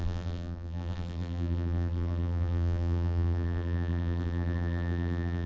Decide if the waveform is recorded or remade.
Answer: remade